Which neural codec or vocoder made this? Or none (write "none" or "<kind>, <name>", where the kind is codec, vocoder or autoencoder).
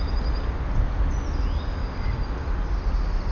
none